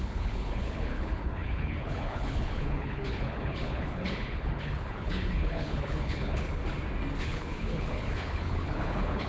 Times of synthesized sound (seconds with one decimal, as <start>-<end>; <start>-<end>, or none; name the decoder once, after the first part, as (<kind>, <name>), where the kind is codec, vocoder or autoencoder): 0.0-6.6 (codec, HILCodec); 7.2-9.3